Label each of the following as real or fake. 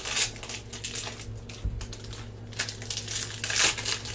real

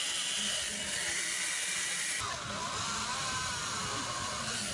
real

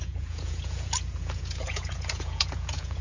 fake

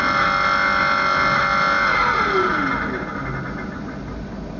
real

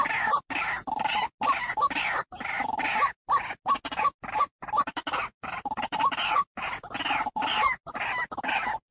real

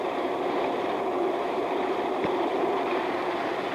fake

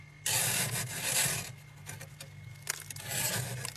real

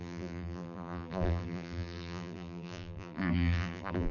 fake